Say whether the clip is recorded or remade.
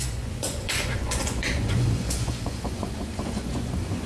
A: remade